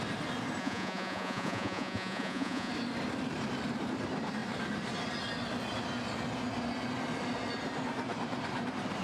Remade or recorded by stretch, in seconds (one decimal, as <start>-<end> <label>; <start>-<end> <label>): 0.0-0.6 recorded; 0.6-2.7 remade; 2.7-9.0 recorded